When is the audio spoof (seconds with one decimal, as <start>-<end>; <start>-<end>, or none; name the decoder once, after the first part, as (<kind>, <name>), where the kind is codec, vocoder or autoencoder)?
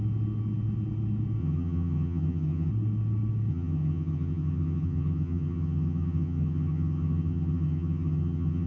1.4-2.7 (vocoder, HiFi-GAN); 3.5-8.7